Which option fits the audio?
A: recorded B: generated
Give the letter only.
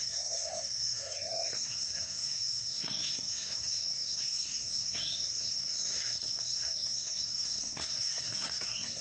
B